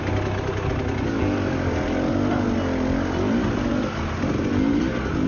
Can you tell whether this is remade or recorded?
recorded